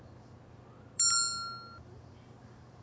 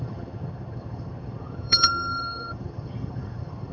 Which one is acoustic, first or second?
first